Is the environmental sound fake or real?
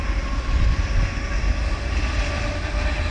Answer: real